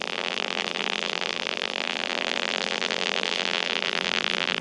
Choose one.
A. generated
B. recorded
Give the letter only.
A